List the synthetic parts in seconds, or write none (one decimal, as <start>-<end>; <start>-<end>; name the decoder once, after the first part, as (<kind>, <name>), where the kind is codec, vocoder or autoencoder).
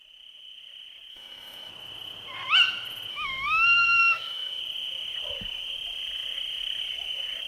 1.1-1.7 (autoencoder, DAC-VAE); 3.1-4.6